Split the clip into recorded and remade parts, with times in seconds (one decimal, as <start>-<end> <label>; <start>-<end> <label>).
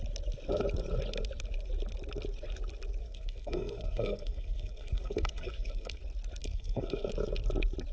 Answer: 0.0-3.0 recorded; 3.0-6.0 remade; 6.0-6.4 recorded; 6.4-7.1 remade; 7.1-7.9 recorded